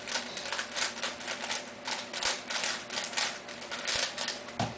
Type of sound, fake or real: real